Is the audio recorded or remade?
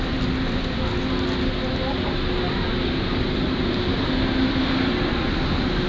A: recorded